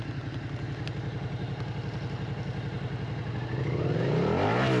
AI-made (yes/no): no